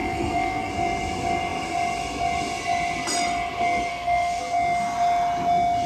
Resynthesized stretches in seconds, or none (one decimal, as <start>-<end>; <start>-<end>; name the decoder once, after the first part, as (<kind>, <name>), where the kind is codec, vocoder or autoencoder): 0.0-0.7 (codec, SNAC); 3.9-4.4

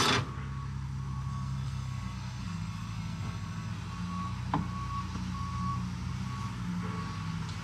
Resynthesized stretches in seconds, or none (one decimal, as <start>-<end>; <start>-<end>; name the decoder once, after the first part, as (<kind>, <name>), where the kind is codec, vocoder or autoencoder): 1.3-3.7 (codec, SNAC)